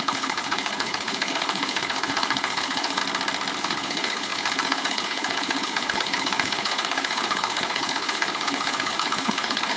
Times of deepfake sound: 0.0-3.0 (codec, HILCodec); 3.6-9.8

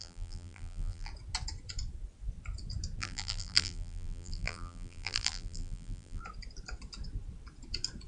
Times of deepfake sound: 0.0-1.1 (vocoder, BigVGAN v2); 3.0-6.2